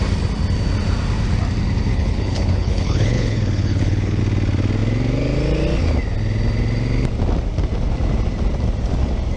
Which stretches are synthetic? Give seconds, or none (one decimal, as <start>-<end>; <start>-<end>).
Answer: 1.9-4.2